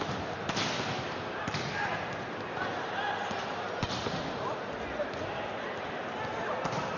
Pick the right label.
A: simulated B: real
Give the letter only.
B